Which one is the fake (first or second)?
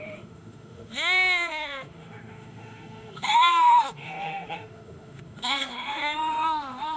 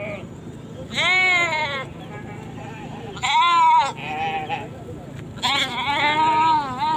first